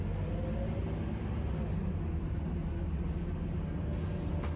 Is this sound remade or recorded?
recorded